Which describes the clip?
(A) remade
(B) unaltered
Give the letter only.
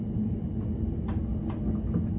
B